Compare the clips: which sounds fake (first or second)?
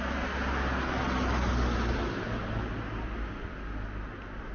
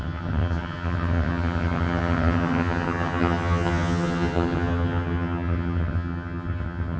second